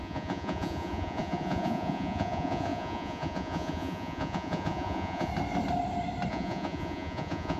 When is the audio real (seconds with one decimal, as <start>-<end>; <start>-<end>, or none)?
5.3-6.3